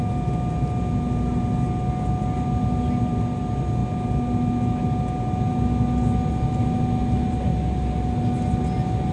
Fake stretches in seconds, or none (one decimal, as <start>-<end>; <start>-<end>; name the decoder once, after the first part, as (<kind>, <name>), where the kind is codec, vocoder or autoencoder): none